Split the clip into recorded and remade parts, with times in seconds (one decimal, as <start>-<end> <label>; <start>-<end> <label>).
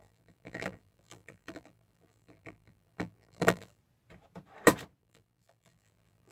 0.0-3.8 remade; 3.8-5.0 recorded; 5.0-6.3 remade